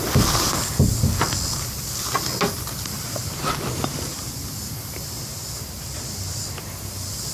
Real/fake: real